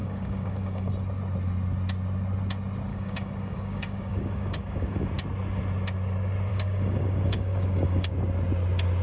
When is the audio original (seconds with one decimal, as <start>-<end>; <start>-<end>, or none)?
0.9-2.9; 5.1-6.5; 8.1-9.0